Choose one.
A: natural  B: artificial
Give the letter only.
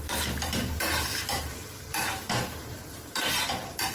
B